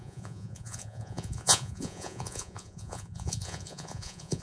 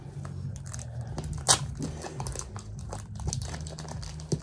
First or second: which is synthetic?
first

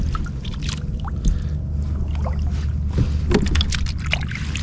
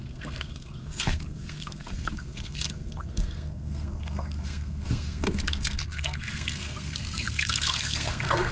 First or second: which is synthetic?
second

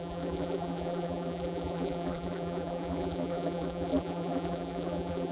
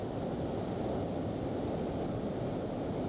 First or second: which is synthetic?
first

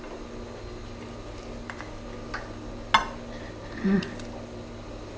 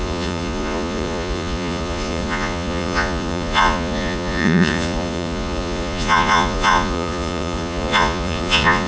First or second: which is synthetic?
second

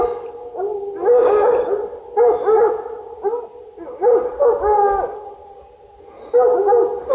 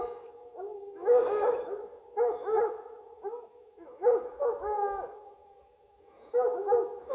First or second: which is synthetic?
second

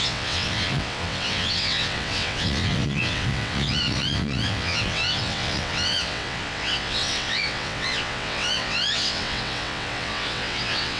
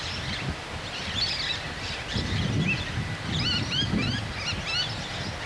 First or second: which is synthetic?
first